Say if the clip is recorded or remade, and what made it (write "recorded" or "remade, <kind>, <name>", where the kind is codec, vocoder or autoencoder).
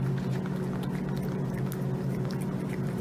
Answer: recorded